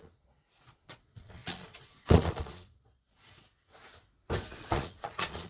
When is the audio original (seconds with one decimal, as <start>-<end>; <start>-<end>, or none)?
3.8-4.5